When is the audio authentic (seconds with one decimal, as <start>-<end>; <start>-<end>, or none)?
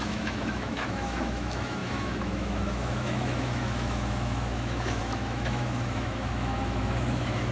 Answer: none